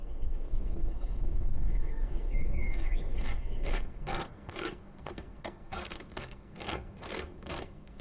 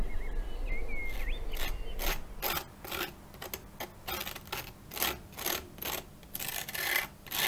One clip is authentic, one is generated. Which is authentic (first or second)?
second